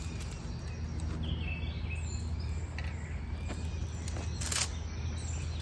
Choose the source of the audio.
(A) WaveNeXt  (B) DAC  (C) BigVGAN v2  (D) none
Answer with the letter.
D